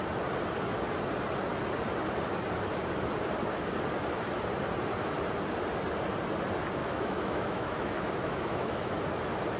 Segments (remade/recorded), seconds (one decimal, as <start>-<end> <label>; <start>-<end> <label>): 0.0-6.8 recorded; 6.8-8.9 remade; 8.9-9.6 recorded